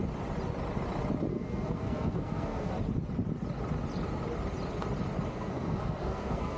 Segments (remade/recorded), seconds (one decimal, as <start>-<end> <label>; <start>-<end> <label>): 0.0-1.3 recorded; 1.3-2.7 remade; 2.7-5.3 recorded; 5.3-6.6 remade